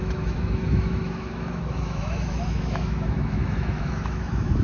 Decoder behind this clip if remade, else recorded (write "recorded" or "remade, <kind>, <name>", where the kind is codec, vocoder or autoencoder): remade, autoencoder, DAC-VAE